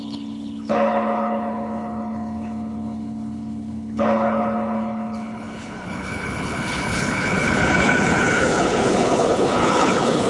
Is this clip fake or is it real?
fake